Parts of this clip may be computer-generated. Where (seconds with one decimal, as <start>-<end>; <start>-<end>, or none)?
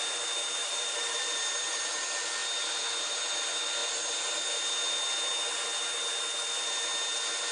0.6-2.0